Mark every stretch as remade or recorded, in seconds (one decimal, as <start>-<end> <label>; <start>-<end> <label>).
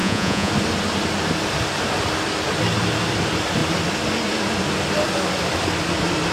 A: 0.0-0.5 remade; 0.5-6.3 recorded